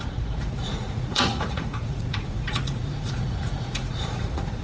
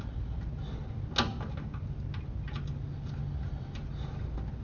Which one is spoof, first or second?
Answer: first